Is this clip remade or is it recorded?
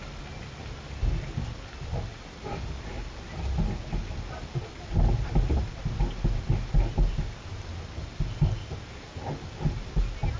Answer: recorded